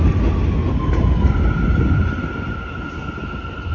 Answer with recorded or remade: recorded